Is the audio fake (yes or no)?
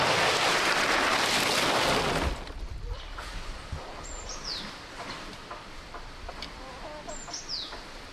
no